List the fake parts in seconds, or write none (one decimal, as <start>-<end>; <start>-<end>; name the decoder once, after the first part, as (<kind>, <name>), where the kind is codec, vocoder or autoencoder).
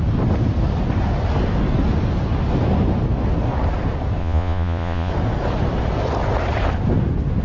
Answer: 4.2-5.1 (vocoder, Vocos)